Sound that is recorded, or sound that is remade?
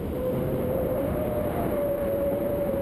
remade